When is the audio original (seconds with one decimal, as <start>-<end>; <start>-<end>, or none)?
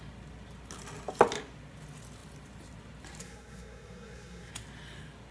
0.0-3.2; 4.5-5.3